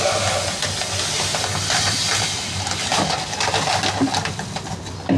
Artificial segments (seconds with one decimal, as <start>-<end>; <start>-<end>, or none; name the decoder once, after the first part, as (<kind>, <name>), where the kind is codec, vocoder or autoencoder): none